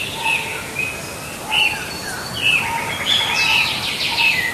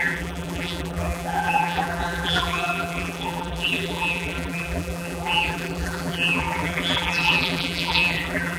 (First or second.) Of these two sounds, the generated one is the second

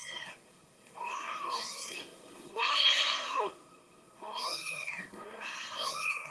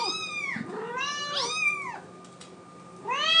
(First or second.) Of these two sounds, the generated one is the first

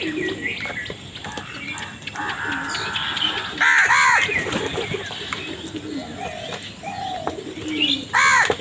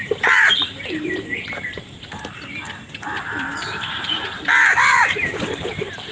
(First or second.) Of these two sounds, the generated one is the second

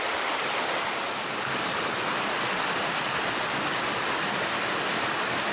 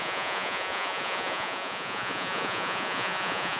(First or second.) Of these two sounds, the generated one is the second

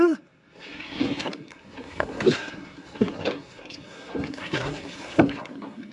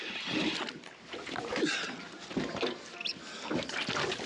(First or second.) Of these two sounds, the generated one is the first